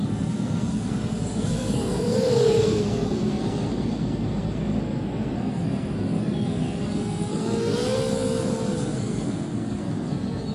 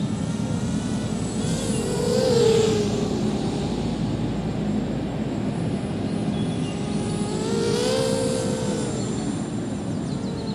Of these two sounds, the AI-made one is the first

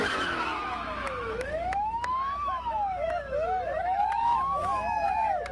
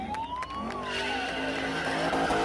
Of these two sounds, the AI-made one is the first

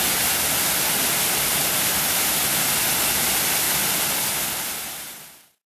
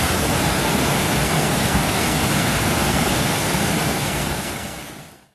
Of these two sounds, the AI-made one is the second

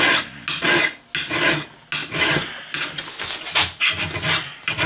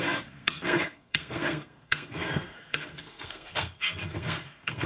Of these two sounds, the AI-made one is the second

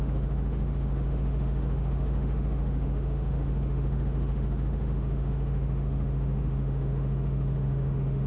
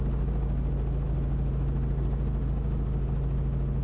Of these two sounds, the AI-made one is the first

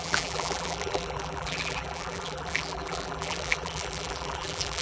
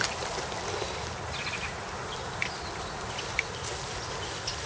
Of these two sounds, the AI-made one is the first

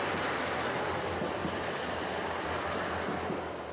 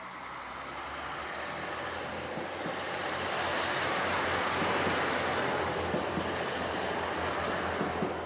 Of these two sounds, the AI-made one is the first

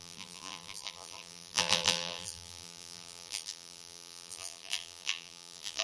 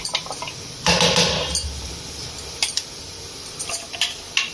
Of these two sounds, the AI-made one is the first